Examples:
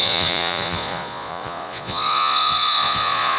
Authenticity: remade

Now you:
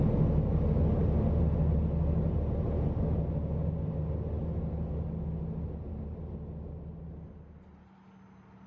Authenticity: recorded